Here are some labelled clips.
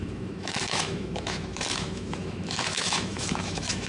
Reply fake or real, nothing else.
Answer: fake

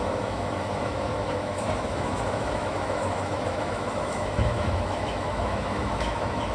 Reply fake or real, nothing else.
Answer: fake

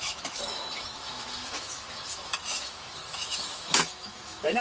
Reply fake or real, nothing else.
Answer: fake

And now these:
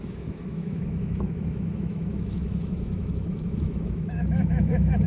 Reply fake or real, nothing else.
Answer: fake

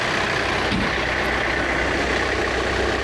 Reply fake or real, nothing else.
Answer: real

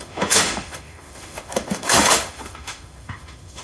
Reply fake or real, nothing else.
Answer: fake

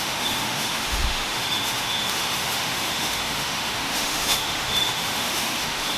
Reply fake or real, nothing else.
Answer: fake